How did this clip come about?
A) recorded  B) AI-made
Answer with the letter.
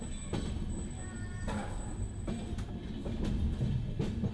A